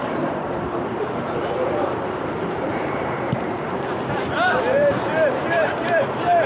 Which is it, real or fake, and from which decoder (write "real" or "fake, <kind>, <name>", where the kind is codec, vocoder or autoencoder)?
fake, vocoder, BigVGAN v2